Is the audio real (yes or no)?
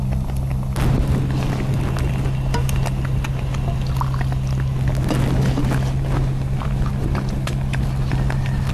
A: yes